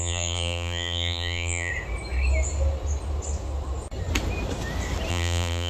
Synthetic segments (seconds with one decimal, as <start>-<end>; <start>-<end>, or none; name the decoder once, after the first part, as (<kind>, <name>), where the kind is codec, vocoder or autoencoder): 0.0-1.7 (vocoder, BigVGAN v2); 5.1-5.7